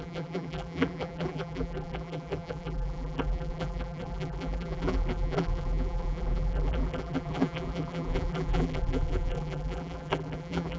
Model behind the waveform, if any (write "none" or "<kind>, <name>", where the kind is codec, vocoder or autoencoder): vocoder, BigVGAN v2